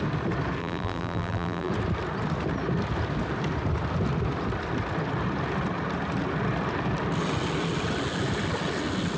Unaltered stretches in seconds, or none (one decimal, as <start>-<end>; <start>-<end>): 0.0-0.6; 1.7-9.2